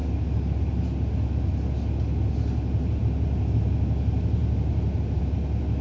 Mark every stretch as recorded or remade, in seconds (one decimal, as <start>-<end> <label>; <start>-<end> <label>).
0.0-5.8 recorded